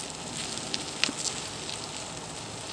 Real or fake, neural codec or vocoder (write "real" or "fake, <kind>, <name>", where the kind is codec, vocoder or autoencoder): real